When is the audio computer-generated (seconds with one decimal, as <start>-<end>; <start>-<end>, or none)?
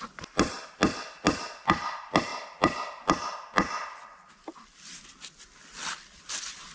none